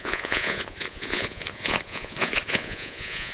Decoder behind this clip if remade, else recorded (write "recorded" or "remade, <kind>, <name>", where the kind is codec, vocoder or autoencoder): remade, vocoder, Vocos